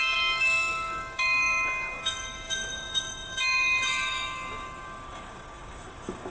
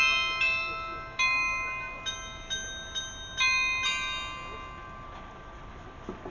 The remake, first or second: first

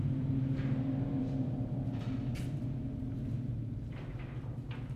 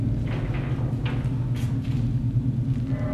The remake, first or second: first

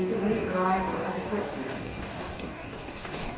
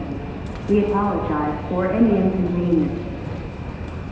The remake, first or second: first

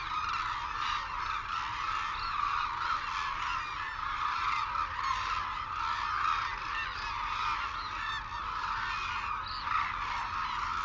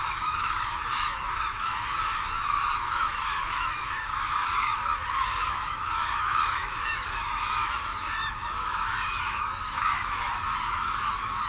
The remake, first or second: second